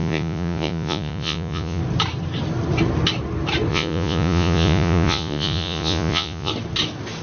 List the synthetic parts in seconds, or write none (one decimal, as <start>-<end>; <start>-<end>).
0.0-1.8; 3.7-6.5